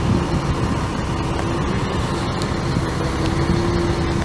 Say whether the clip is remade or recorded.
recorded